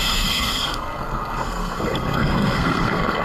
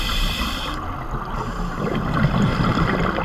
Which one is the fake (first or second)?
first